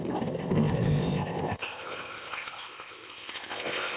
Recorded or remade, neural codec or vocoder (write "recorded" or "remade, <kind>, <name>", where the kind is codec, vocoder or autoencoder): remade, codec, ZipCodec